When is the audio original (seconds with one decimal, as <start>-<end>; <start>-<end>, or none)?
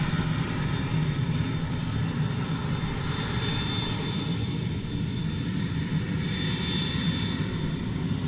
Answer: 0.0-8.3